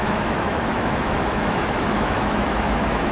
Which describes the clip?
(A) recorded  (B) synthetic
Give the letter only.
B